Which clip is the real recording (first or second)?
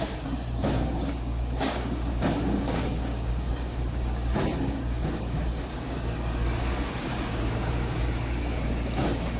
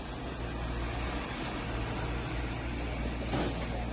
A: second